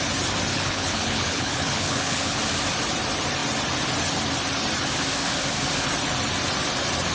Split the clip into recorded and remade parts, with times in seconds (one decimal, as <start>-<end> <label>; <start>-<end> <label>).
0.0-0.5 recorded; 0.5-2.4 remade; 2.4-7.1 recorded